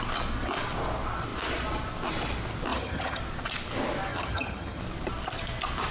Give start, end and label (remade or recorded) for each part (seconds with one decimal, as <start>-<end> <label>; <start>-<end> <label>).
0.0-2.7 recorded; 2.7-3.2 remade; 3.2-4.1 recorded; 4.1-4.8 remade; 4.8-5.9 recorded